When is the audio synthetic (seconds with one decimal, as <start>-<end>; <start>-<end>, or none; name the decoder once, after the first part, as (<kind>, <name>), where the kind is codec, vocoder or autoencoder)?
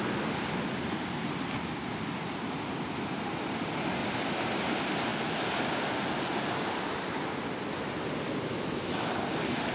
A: 8.5-9.2 (autoencoder, DAC-VAE)